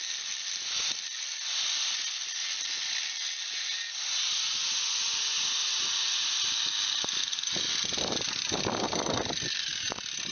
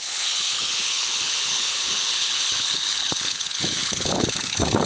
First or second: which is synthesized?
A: second